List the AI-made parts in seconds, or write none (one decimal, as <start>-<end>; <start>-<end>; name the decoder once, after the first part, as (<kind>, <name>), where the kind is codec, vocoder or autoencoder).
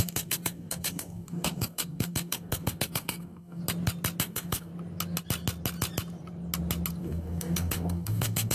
0.0-3.6 (codec, DAC); 4.2-4.7; 7.0-8.5